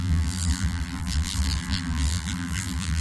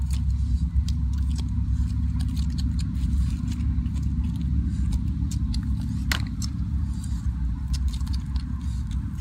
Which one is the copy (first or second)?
first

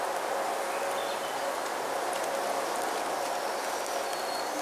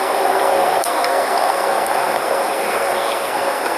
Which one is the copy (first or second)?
second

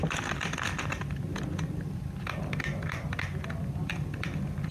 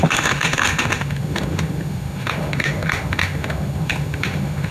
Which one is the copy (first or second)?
second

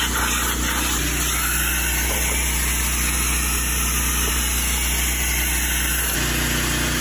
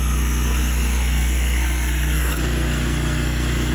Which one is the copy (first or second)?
second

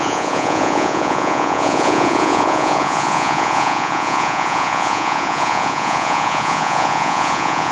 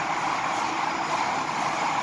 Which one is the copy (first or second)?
first